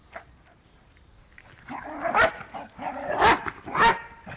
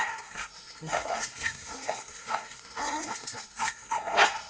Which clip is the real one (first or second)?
first